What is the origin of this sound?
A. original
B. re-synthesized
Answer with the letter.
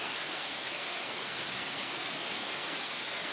B